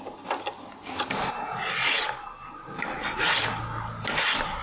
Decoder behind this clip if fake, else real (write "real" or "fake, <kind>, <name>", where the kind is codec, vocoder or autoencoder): real